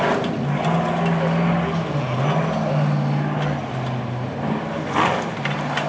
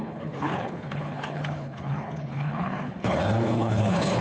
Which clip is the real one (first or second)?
first